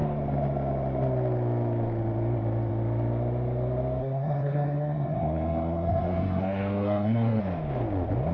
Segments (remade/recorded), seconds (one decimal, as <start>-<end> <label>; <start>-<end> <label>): 0.0-4.0 recorded; 4.0-7.4 remade; 7.4-8.3 recorded